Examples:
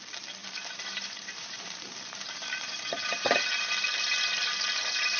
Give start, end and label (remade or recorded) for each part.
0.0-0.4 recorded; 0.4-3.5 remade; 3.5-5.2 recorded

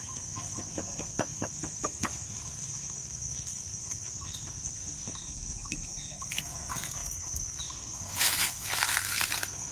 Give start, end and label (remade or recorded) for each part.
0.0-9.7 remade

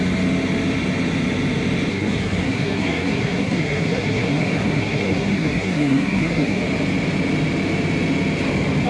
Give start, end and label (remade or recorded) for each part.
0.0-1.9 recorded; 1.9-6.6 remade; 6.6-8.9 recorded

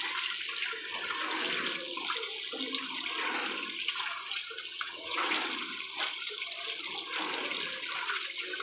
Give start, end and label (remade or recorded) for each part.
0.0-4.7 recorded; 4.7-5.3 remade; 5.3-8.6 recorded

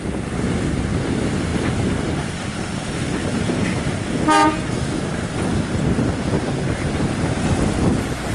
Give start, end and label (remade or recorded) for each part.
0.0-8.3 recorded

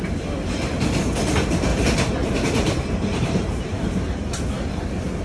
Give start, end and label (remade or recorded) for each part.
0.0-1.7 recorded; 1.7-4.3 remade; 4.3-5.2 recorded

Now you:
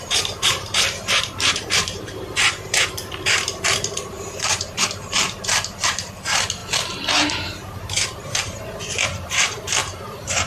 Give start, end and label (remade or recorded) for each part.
0.0-6.6 remade; 6.6-7.3 recorded; 7.3-10.5 remade